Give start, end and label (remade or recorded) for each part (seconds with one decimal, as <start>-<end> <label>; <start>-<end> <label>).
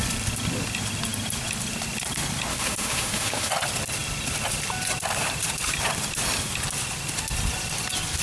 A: 0.0-2.5 recorded; 2.5-3.5 remade; 3.5-8.2 recorded